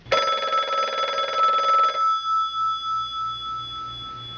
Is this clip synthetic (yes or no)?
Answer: no